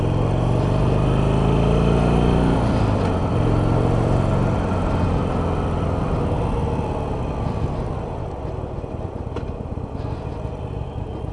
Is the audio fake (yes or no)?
no